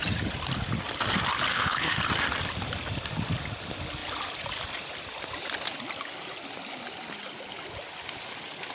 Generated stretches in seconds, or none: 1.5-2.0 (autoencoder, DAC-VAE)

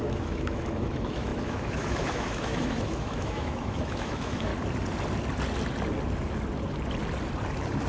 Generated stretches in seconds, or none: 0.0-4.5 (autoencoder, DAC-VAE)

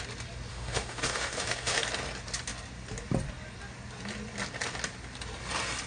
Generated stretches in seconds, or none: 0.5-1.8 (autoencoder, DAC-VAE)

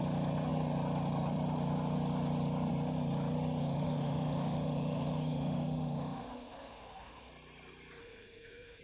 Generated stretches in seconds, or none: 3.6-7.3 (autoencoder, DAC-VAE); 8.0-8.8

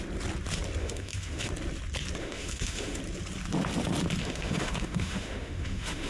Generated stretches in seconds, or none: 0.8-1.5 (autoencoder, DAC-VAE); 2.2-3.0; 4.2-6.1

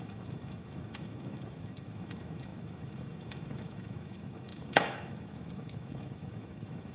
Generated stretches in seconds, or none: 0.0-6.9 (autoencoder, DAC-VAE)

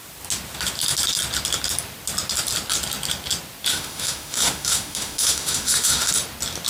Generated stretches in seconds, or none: 3.7-6.1 (autoencoder, DAC-VAE)

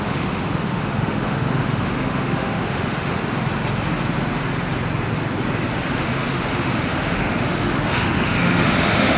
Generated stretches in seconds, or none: 0.0-3.2 (autoencoder, DAC-VAE); 5.7-9.2